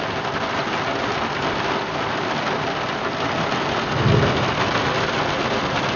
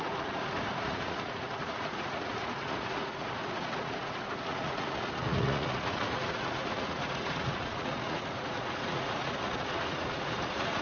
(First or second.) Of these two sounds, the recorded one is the first